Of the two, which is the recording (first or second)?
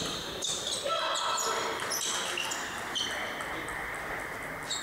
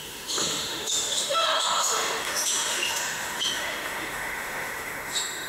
first